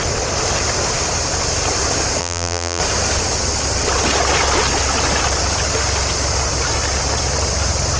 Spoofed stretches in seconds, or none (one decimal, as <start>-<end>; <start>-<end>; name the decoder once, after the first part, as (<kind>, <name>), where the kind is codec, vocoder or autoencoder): 2.2-2.8 (vocoder, BigVGAN v2)